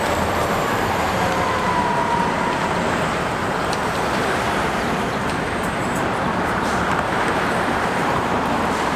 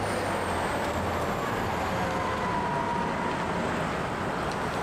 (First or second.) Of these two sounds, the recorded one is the second